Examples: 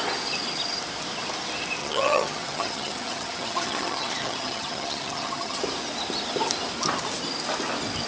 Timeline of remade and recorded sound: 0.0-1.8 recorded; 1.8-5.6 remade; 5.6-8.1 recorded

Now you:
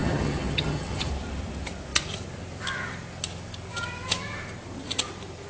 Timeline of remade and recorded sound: 0.0-1.1 remade; 1.1-5.5 recorded

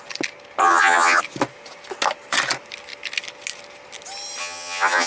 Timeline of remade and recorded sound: 0.0-0.6 recorded; 0.6-1.2 remade; 1.2-4.4 recorded; 4.4-5.1 remade

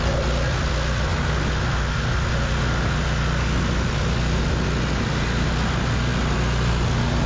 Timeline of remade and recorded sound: 0.0-7.3 recorded

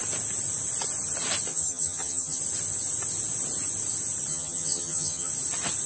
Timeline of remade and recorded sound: 0.0-1.5 recorded; 1.5-2.4 remade; 2.4-4.3 recorded; 4.3-5.3 remade; 5.3-5.9 recorded

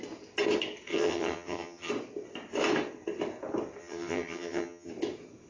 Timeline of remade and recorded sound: 0.0-0.9 recorded; 0.9-1.9 remade; 1.9-3.8 recorded; 3.8-4.9 remade; 4.9-5.5 recorded